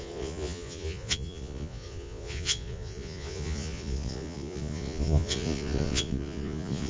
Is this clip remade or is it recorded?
remade